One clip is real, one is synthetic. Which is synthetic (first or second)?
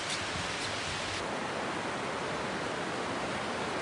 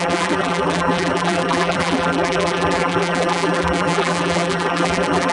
second